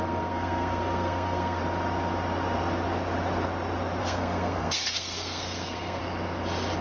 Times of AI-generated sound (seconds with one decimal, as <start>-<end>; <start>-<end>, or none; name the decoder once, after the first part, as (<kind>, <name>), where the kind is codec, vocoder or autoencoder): 0.0-1.6 (codec, SNAC); 4.0-6.0